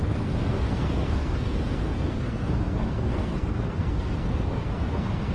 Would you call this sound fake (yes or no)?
yes